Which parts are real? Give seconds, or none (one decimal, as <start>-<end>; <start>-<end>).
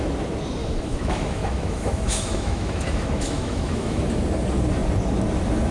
0.0-0.6; 4.0-5.7